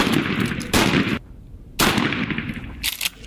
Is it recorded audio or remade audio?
recorded